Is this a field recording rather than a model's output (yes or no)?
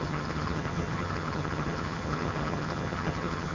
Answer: no